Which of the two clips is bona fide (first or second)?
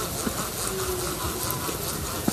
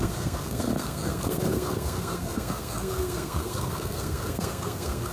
first